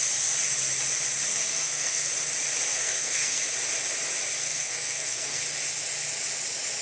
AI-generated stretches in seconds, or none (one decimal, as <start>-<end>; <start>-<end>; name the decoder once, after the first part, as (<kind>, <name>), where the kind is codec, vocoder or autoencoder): 1.3-2.1 (codec, SNAC); 2.7-3.4; 4.4-5.4